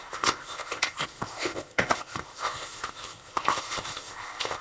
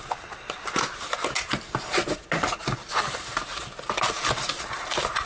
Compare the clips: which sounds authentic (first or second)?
second